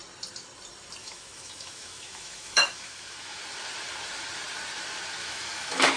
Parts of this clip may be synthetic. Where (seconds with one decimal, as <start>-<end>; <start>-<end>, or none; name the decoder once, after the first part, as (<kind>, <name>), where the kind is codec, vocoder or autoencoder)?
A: 1.0-3.4 (autoencoder, DAC-VAE); 5.2-6.0